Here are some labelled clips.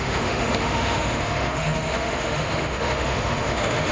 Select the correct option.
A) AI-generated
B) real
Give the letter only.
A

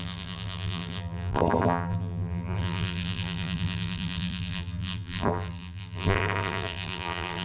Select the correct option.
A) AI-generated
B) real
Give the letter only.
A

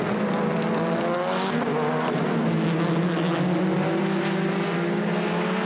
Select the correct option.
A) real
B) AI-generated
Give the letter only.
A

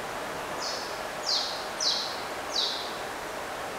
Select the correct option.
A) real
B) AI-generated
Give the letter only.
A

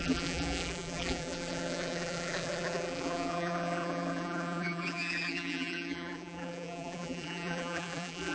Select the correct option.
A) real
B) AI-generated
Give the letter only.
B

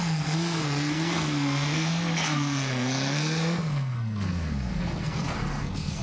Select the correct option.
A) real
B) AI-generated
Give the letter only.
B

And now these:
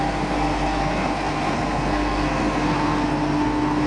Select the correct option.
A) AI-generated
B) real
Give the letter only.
A